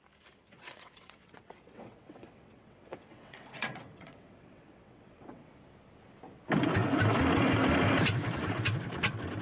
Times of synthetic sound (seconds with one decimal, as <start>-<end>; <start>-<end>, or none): 0.4-5.5